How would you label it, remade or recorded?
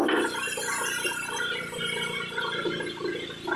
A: recorded